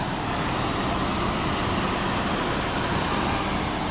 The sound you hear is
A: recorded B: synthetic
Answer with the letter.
A